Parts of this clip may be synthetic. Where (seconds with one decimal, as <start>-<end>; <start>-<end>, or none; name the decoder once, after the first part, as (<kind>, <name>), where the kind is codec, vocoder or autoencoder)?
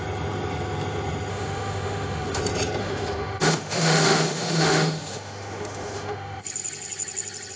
1.3-2.4 (autoencoder, DAC-VAE); 2.8-6.4